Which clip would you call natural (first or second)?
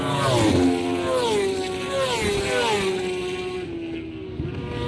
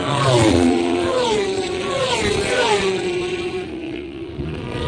first